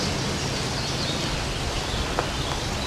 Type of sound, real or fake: real